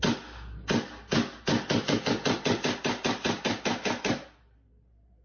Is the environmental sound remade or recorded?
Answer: recorded